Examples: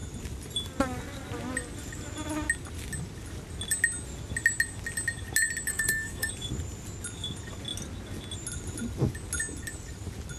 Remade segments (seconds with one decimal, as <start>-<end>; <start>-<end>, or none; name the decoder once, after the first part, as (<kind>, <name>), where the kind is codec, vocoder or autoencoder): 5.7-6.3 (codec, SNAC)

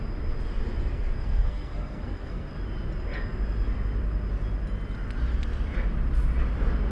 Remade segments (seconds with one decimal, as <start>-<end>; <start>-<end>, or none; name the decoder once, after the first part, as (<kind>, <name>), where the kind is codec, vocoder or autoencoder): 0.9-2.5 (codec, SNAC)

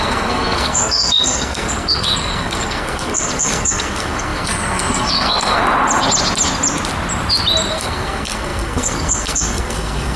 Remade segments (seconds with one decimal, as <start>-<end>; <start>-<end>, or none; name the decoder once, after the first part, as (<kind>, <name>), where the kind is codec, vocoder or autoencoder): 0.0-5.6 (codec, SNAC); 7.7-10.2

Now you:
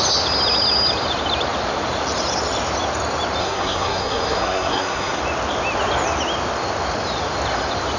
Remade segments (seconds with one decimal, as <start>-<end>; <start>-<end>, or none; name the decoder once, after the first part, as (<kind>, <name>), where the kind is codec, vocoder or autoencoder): 3.4-5.2 (codec, SNAC)

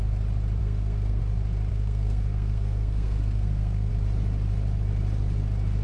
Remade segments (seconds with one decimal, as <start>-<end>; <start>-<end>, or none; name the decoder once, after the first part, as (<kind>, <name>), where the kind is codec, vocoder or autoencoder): 0.6-1.2 (codec, SNAC); 1.7-3.9

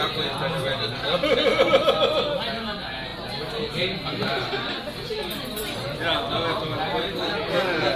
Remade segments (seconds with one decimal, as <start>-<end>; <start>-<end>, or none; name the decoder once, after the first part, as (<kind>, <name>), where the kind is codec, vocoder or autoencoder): none